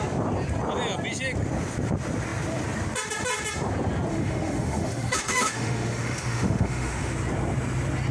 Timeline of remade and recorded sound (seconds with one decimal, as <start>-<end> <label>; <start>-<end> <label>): 0.0-4.1 recorded; 4.1-7.1 remade; 7.1-8.1 recorded